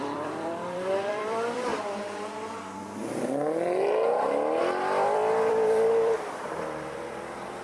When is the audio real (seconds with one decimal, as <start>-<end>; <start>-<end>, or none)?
1.7-4.6